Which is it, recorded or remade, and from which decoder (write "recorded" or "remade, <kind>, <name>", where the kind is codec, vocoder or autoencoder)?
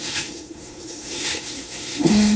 remade, codec, SNAC